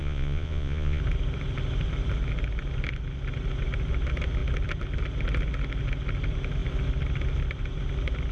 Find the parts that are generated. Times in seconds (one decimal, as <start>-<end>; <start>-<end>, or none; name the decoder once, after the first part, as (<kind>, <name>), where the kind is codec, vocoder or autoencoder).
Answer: 0.0-1.0 (vocoder, Vocos)